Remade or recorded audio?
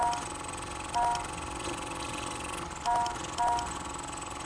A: recorded